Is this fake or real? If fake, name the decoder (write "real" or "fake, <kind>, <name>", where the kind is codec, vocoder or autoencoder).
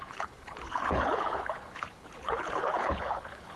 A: fake, codec, HILCodec